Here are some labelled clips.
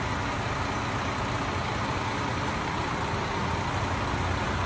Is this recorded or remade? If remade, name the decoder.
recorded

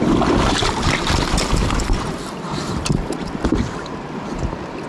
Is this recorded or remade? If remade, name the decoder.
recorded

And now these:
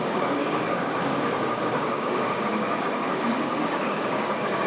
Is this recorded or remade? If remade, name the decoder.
remade, codec, DAC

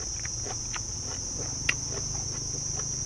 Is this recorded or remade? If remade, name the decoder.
recorded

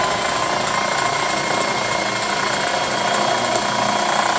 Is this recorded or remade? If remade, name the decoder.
recorded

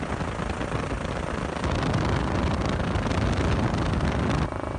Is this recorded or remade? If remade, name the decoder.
recorded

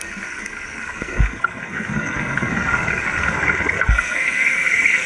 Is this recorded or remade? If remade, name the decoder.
remade, codec, SNAC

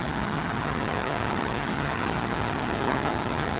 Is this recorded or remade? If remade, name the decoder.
remade, vocoder, HiFi-GAN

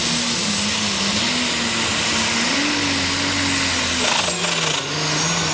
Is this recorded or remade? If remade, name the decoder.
recorded